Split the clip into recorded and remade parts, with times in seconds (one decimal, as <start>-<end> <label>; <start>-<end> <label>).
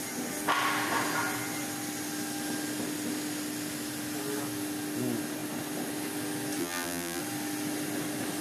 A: 0.0-6.6 recorded; 6.6-7.2 remade; 7.2-8.4 recorded